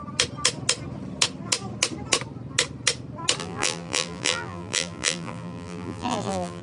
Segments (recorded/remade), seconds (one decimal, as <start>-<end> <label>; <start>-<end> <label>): 0.0-3.4 recorded; 3.4-6.6 remade